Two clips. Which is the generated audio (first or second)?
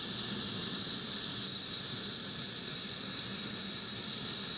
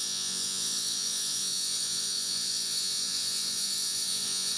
second